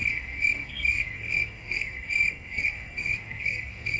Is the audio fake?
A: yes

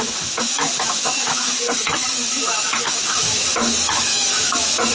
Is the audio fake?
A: yes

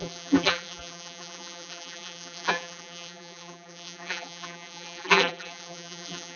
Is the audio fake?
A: yes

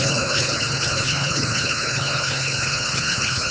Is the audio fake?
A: yes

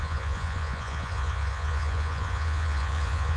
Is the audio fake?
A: yes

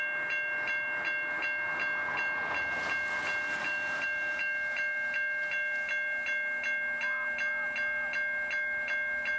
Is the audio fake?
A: no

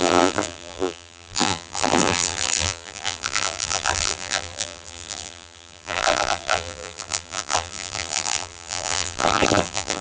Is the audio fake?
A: yes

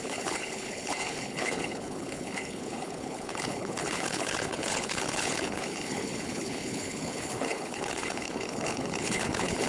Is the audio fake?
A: yes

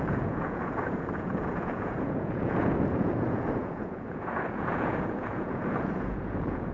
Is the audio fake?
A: yes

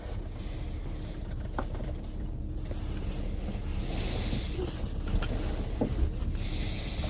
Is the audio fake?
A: no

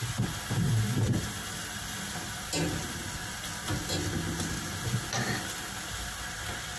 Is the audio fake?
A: no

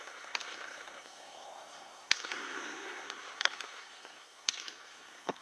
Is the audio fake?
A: yes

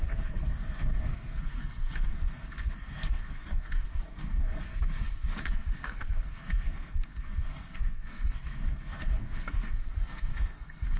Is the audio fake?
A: yes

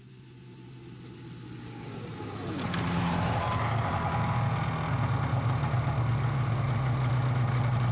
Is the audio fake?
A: no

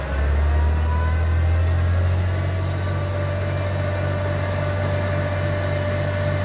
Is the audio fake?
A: no